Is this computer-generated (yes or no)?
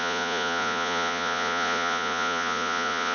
yes